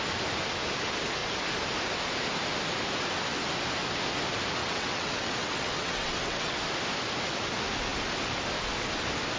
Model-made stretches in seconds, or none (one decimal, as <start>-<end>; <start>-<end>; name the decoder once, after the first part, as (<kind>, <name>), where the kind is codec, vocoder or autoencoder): 4.6-6.6 (vocoder, WaveNeXt)